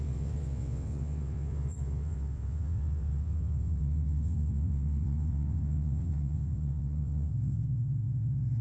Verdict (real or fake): fake